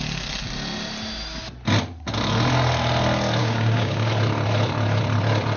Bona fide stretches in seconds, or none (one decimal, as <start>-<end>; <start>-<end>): 0.0-3.4; 4.1-5.6